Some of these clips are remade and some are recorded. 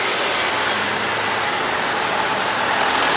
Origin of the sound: recorded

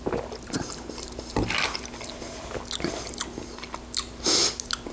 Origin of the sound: recorded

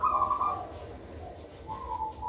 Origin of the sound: recorded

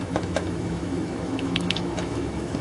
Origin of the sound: remade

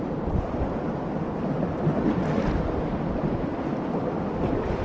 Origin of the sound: recorded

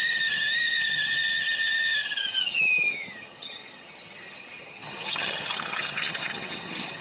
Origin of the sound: remade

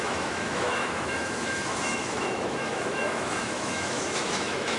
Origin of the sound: remade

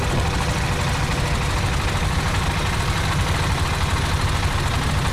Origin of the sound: recorded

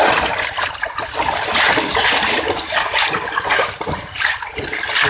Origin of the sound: recorded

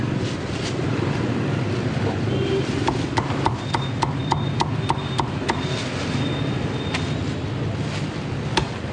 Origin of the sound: recorded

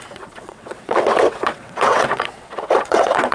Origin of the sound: remade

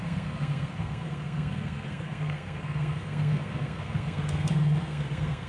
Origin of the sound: remade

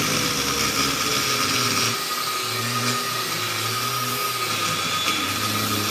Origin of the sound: recorded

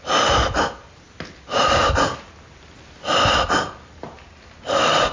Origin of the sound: recorded